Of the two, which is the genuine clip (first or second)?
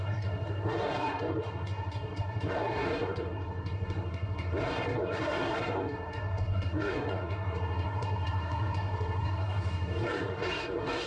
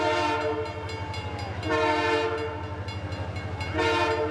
second